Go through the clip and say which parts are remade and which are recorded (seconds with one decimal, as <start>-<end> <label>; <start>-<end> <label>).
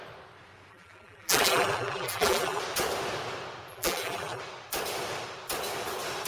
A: 0.0-0.7 recorded; 0.7-2.6 remade; 2.6-3.7 recorded; 3.7-4.4 remade; 4.4-6.3 recorded